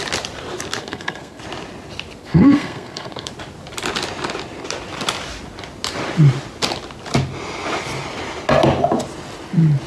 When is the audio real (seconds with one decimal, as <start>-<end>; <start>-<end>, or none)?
0.0-0.8; 1.4-2.2; 3.3-9.9